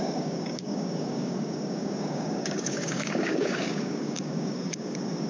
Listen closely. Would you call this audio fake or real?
fake